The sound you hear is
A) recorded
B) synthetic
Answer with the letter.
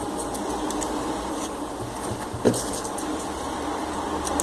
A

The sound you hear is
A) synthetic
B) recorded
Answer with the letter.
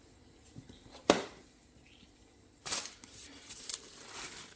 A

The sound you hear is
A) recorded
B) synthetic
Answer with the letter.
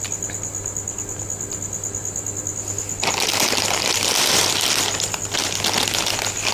A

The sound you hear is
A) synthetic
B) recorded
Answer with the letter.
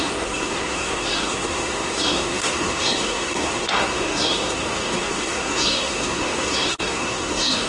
A